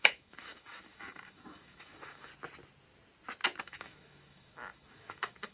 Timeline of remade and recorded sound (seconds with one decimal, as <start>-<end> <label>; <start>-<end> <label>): 0.0-2.3 remade; 2.3-3.6 recorded; 3.6-5.5 remade